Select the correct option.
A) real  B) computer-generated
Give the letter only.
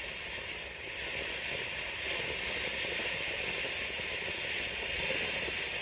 A